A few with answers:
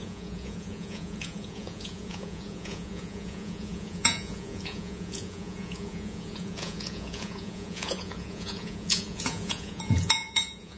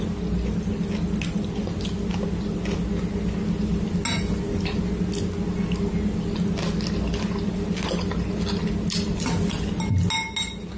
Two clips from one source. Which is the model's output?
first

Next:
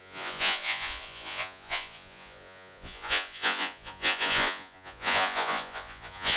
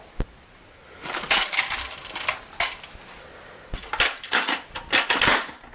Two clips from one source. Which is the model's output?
first